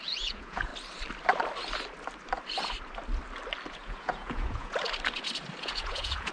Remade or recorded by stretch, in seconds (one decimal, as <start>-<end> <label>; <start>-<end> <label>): 0.0-0.7 remade; 0.7-3.7 recorded; 3.7-4.8 remade; 4.8-5.6 recorded; 5.6-6.3 remade